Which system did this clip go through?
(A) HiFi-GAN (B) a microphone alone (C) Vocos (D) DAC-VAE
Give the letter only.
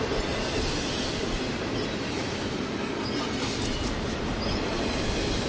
B